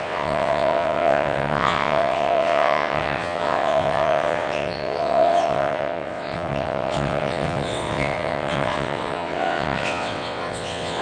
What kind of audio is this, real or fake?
fake